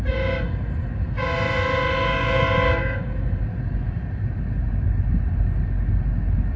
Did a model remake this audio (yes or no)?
no